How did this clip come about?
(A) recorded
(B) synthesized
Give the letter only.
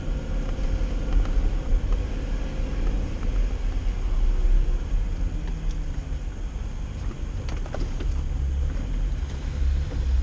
A